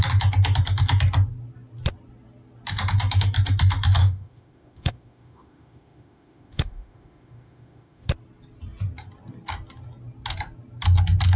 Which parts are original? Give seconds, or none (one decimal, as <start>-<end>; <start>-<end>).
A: 0.0-4.0; 8.1-11.4